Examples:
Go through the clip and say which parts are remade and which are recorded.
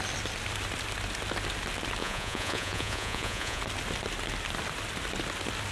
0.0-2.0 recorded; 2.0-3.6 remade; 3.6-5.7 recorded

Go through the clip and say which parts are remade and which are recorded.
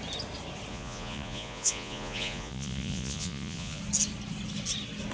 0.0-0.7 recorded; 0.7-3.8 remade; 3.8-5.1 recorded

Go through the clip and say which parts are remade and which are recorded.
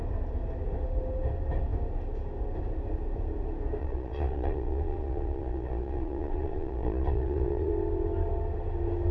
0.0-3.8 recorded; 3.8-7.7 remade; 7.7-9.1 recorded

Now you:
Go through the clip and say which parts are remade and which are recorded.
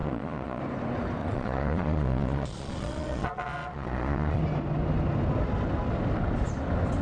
0.0-0.6 remade; 0.6-1.2 recorded; 1.2-4.4 remade; 4.4-7.0 recorded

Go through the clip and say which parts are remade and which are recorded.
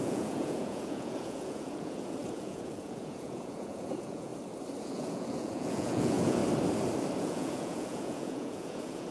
0.0-4.3 remade; 4.3-4.8 recorded; 4.8-6.4 remade; 6.4-7.2 recorded; 7.2-9.1 remade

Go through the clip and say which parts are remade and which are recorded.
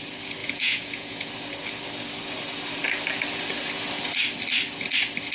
0.0-0.4 recorded; 0.4-1.3 remade; 1.3-5.3 recorded